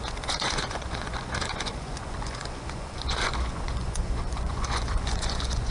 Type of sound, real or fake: fake